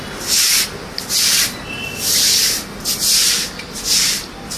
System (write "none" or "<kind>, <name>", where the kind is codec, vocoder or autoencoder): none